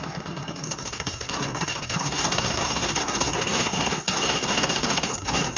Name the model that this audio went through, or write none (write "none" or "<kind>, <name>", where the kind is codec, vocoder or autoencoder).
codec, SNAC